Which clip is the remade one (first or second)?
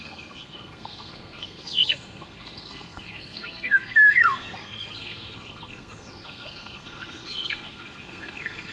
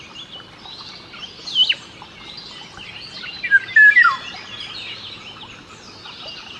first